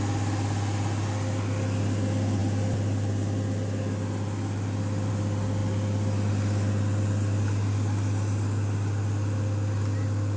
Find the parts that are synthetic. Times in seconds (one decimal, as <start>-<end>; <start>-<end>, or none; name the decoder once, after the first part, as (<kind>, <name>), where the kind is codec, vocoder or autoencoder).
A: none